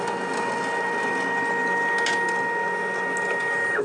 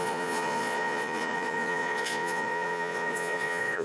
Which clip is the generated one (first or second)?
second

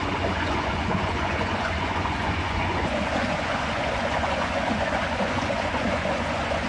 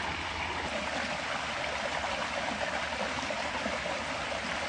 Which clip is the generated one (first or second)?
first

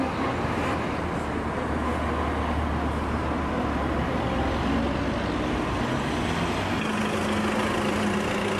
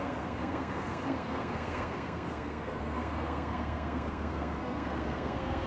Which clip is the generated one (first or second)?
second